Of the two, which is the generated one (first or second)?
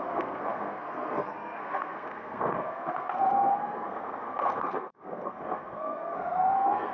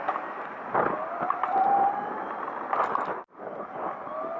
first